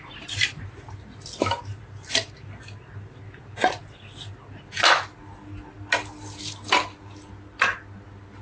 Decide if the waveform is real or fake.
real